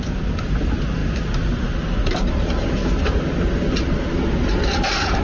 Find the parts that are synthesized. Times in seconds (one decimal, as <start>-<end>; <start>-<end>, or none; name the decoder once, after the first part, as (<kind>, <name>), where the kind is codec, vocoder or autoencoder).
0.0-1.0 (vocoder, BigVGAN v2); 4.1-5.2